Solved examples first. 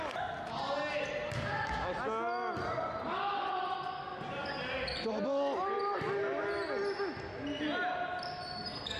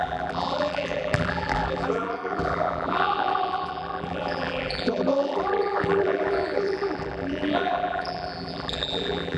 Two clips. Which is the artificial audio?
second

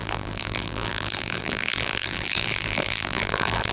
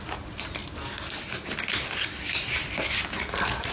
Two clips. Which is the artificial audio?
first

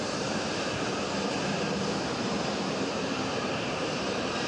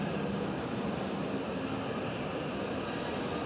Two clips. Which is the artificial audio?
first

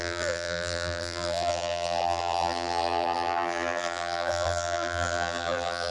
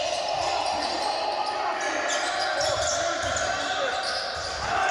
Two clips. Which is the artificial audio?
first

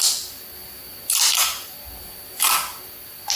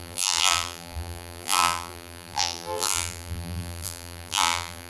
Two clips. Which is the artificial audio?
second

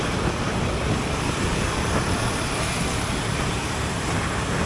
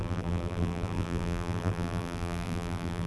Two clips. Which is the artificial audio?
second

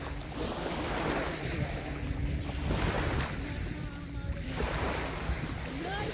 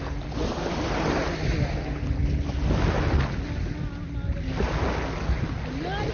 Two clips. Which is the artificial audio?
first